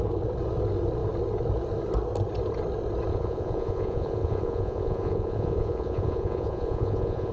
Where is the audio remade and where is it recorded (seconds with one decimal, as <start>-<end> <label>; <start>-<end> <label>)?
0.0-3.1 recorded; 3.1-7.3 remade